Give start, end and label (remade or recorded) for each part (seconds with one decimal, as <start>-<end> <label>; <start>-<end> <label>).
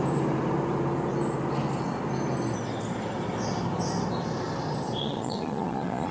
0.0-5.0 recorded; 5.0-6.1 remade